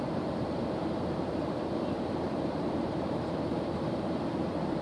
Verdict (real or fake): fake